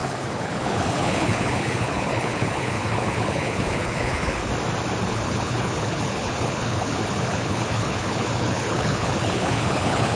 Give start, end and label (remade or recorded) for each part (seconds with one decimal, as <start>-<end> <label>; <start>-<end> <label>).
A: 0.0-4.5 remade; 4.5-5.0 recorded; 5.0-10.2 remade